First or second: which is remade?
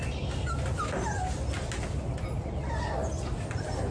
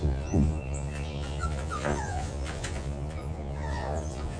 second